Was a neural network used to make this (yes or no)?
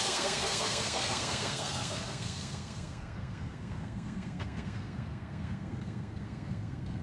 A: yes